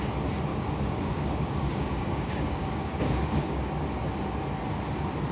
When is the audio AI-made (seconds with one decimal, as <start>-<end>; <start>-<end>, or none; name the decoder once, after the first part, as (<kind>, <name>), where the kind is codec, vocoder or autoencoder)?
0.5-3.6 (codec, DAC)